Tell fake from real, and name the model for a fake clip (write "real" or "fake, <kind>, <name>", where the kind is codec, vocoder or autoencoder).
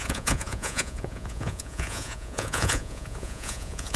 fake, vocoder, Vocos